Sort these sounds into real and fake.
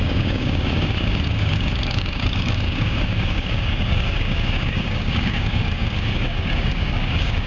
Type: fake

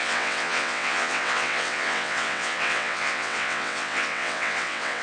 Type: fake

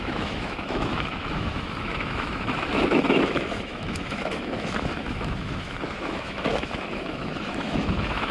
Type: fake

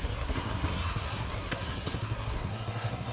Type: fake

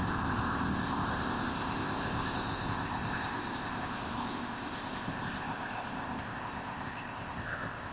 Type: fake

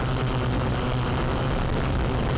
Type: real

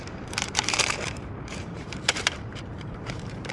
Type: fake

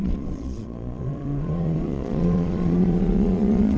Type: fake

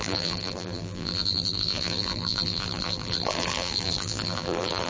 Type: fake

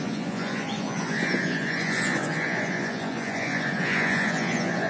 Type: fake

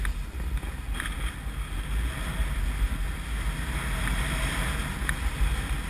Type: real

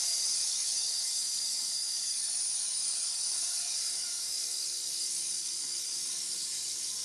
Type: fake